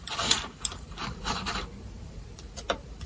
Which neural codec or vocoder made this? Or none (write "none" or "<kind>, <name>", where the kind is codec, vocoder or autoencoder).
vocoder, BigVGAN v2